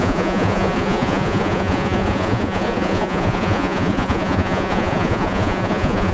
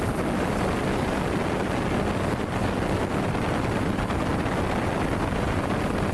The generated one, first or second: first